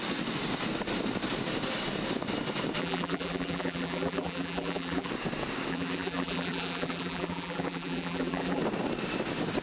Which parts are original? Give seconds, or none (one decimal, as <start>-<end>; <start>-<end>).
0.0-2.8; 5.1-5.7; 8.6-9.6